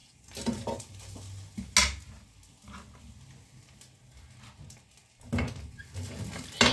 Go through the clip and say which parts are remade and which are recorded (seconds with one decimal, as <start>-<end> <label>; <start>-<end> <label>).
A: 0.0-6.7 recorded